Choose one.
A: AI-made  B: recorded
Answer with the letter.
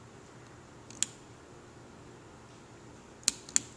B